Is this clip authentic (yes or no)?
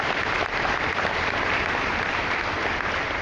no